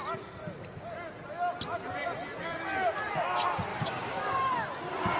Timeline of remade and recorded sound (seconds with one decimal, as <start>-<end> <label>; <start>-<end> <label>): 0.0-3.7 recorded; 3.7-4.5 remade; 4.5-5.2 recorded